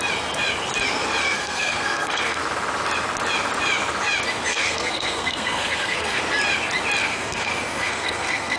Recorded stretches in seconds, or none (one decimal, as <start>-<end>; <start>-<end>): 0.0-1.2; 2.4-4.5; 6.2-7.0